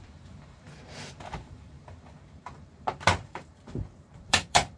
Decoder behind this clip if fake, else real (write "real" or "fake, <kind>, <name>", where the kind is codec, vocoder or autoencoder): fake, vocoder, BigVGAN v2